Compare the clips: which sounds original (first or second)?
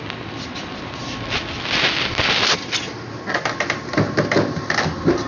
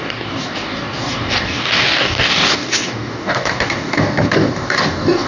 first